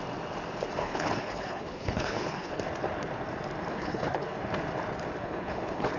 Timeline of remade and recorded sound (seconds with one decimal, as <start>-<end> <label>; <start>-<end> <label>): 0.0-0.8 recorded; 0.8-2.6 remade; 2.6-3.7 recorded; 3.7-4.4 remade; 4.4-5.2 recorded; 5.2-6.0 remade